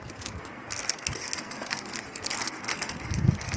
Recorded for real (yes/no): no